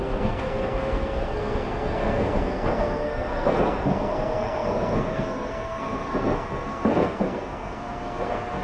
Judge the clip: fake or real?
fake